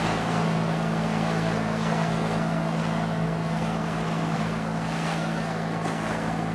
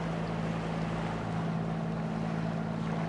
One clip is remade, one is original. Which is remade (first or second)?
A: first